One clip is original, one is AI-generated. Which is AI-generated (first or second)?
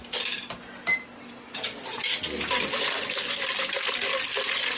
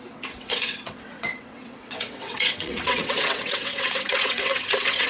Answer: second